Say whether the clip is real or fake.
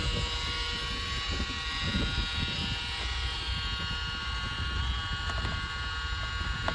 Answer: real